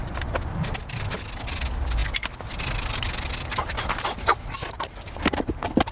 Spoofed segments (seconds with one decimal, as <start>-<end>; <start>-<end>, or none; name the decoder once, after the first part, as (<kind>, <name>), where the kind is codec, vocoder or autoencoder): none